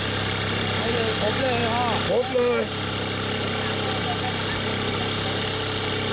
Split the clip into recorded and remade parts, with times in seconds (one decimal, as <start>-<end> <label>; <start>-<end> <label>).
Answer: 0.0-6.1 recorded